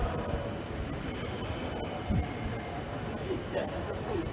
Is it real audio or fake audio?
real